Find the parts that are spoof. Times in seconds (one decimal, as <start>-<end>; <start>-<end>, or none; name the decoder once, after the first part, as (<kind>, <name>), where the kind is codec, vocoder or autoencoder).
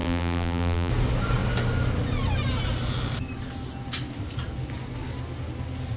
0.0-0.9 (vocoder, BigVGAN v2)